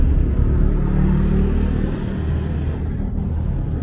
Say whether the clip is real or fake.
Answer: real